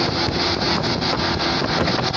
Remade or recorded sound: recorded